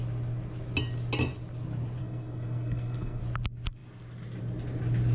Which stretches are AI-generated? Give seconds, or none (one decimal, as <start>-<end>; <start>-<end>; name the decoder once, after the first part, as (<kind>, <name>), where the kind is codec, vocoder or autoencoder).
2.0-3.2 (codec, SNAC)

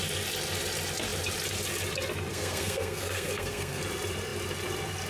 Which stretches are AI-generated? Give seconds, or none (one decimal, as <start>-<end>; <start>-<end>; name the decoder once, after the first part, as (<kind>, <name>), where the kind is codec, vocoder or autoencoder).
2.3-3.8 (codec, SNAC)

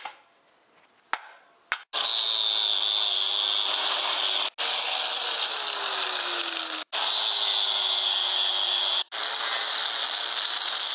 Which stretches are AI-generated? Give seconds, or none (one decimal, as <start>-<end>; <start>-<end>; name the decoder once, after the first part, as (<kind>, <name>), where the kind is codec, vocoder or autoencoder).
none

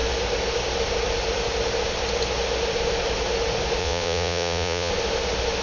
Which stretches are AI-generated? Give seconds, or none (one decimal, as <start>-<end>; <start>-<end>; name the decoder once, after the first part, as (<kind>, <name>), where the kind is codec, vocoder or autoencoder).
3.8-4.9 (vocoder, Vocos)

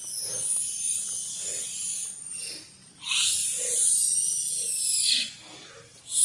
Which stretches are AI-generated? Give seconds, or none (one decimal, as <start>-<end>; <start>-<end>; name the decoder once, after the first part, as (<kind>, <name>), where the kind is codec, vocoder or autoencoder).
2.8-4.7 (vocoder, BigVGAN v2)

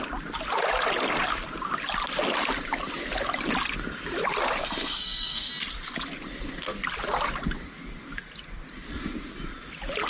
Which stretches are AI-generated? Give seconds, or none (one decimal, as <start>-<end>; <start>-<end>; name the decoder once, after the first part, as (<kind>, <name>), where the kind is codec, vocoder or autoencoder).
4.6-5.5 (codec, SNAC)

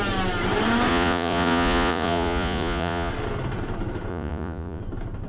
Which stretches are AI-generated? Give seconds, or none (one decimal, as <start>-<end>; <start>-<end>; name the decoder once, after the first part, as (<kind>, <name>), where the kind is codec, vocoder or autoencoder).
0.9-3.1 (vocoder, Vocos); 4.1-4.8

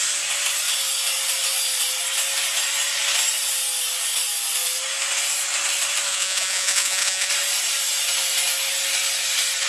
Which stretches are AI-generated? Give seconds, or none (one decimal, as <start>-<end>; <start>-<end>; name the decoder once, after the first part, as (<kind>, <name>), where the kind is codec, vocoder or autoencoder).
6.1-7.3 (vocoder, Vocos)